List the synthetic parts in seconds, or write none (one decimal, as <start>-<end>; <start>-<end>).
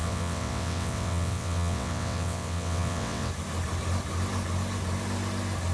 0.0-3.3